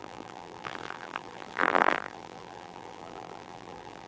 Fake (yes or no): yes